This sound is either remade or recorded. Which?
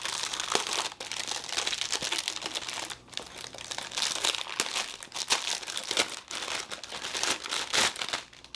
recorded